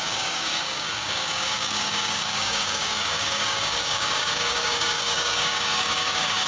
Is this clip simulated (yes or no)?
yes